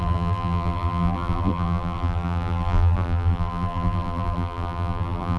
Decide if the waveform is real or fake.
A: fake